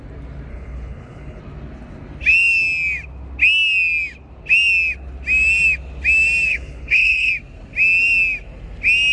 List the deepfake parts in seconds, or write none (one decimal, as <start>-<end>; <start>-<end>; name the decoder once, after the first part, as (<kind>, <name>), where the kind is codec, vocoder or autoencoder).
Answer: 0.5-1.4 (codec, HILCodec); 6.5-7.3